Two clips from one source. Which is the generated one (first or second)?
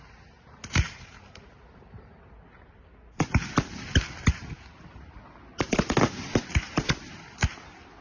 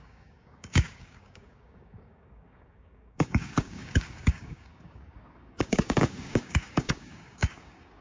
second